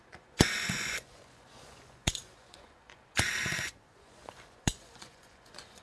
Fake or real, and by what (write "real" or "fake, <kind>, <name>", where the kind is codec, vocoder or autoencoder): fake, vocoder, Vocos